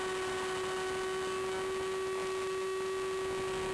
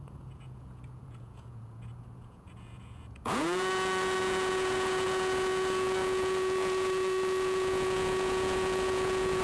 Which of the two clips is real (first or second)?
first